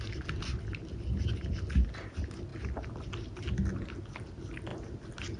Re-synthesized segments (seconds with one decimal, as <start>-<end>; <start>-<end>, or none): none